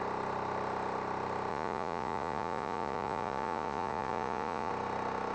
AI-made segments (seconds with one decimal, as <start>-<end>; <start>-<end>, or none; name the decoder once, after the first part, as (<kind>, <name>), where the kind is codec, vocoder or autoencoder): 1.5-4.7 (vocoder, Vocos)